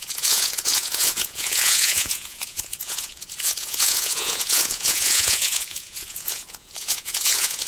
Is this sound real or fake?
fake